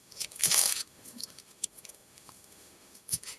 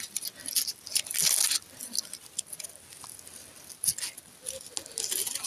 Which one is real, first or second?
second